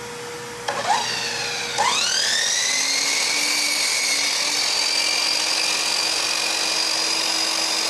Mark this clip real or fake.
real